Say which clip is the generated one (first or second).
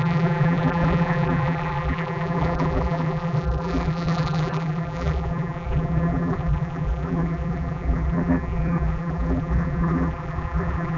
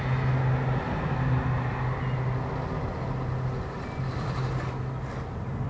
first